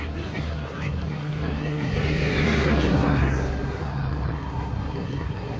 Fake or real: fake